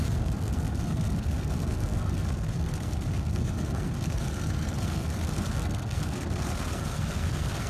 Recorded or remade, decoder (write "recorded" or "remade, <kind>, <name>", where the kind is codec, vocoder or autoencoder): remade, codec, SNAC